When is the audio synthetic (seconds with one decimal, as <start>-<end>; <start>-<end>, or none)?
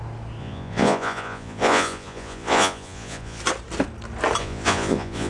0.4-3.4; 4.4-5.3